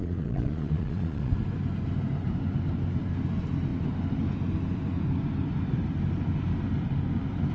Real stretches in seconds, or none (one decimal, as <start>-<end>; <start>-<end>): 1.3-7.5